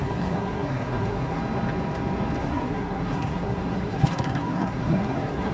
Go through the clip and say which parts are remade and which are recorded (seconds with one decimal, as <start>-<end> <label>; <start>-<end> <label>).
0.0-1.4 remade; 1.4-2.4 recorded; 2.4-5.5 remade